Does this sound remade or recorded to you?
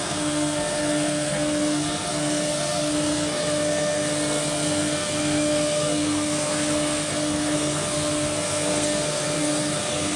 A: remade